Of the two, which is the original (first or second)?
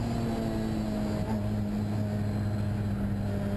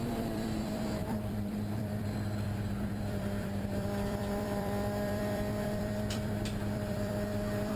first